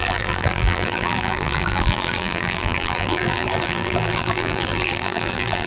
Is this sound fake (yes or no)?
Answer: yes